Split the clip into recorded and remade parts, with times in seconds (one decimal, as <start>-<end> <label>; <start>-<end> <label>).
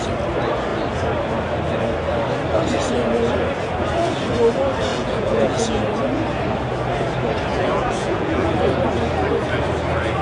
0.0-4.9 recorded; 4.9-5.8 remade; 5.8-7.5 recorded; 7.5-8.5 remade; 8.5-10.2 recorded